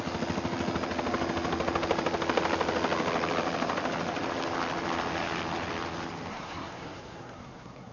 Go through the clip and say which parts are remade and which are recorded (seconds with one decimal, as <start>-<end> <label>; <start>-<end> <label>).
0.0-6.3 recorded; 6.3-7.9 remade